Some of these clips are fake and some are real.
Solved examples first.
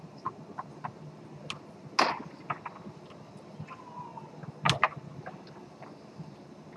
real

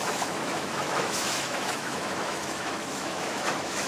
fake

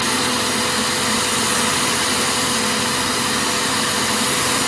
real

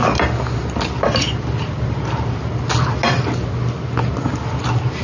real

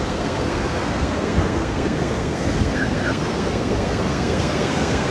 fake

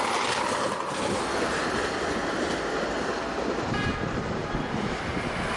real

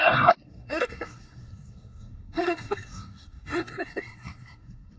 fake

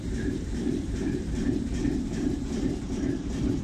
fake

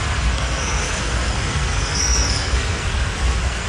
fake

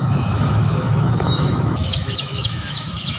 fake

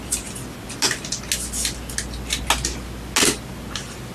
real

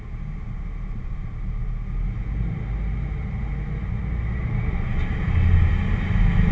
real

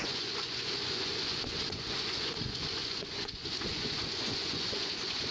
fake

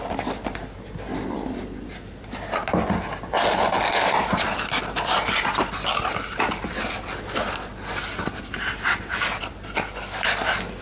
real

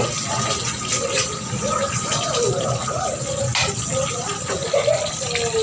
real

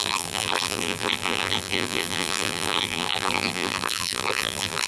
fake